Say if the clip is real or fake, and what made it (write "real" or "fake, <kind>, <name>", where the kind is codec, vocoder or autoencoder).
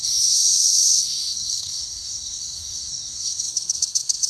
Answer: fake, codec, SNAC